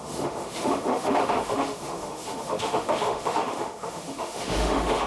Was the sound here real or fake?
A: fake